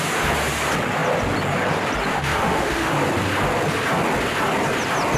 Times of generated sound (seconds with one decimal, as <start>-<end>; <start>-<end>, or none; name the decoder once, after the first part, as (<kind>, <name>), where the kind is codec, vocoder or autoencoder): 2.1-2.9 (autoencoder, DAC-VAE)

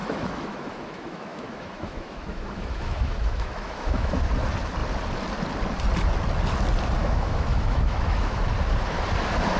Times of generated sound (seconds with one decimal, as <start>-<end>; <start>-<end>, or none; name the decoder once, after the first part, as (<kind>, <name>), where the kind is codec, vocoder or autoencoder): 0.0-4.2 (autoencoder, DAC-VAE); 7.0-8.4

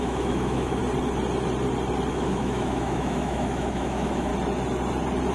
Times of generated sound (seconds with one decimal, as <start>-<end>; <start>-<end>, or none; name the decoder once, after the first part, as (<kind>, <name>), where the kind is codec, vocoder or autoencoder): 0.0-0.8 (autoencoder, DAC-VAE); 2.1-4.3

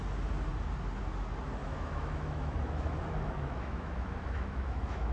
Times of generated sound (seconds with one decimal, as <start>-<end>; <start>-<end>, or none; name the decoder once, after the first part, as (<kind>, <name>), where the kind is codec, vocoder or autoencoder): 1.6-5.1 (autoencoder, DAC-VAE)

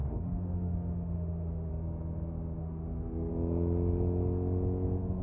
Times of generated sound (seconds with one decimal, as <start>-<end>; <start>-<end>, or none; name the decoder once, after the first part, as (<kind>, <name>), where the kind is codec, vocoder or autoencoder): 0.0-1.7 (autoencoder, DAC-VAE); 2.6-3.3

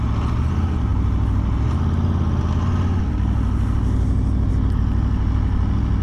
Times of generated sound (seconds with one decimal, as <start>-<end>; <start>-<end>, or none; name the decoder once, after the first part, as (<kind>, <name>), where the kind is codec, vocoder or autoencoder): none

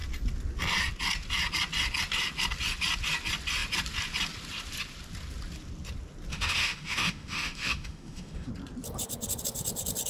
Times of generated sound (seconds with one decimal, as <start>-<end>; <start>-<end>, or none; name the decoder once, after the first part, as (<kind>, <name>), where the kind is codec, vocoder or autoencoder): 6.3-8.5 (autoencoder, DAC-VAE)

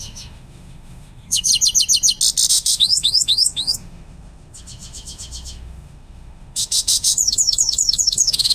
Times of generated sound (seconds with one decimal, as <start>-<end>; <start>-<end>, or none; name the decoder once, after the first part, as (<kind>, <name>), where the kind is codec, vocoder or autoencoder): 0.0-1.5 (autoencoder, DAC-VAE); 2.5-8.5